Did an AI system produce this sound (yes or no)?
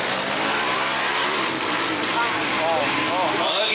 no